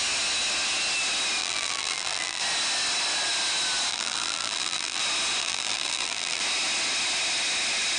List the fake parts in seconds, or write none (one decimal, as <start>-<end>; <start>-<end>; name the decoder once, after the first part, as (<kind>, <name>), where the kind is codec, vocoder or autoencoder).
1.4-2.4 (vocoder, BigVGAN v2); 3.9-5.0; 5.4-6.4